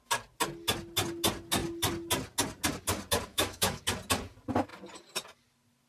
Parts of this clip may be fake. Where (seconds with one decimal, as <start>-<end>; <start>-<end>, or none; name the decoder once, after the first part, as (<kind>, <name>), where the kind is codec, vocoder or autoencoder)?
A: 3.3-3.8 (autoencoder, DAC-VAE)